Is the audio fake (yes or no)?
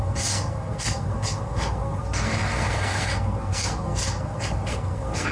yes